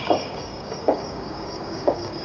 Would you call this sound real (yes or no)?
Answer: no